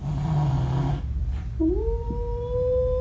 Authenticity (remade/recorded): recorded